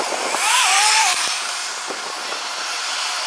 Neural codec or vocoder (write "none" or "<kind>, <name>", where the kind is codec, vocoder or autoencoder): vocoder, BigVGAN v2